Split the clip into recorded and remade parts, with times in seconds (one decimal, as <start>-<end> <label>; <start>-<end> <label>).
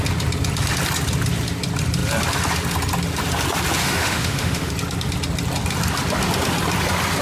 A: 0.0-3.8 recorded; 3.8-4.7 remade; 4.7-7.2 recorded